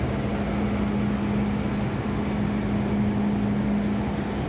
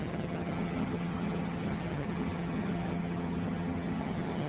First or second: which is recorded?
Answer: first